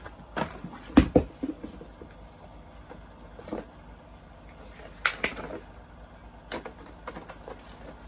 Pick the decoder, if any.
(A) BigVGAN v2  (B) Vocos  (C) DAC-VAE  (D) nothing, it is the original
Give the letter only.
D